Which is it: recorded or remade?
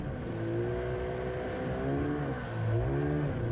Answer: recorded